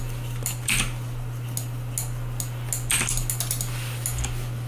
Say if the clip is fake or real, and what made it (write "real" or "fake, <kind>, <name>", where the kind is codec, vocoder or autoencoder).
real